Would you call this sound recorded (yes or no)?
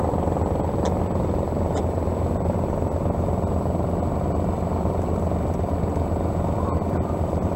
yes